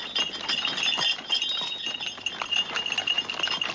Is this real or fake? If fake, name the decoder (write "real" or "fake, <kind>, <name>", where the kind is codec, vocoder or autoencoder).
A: real